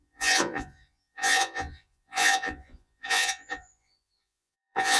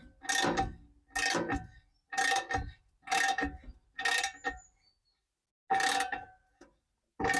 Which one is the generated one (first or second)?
first